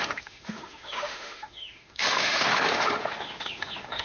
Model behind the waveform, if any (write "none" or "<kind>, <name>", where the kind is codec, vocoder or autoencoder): autoencoder, DAC-VAE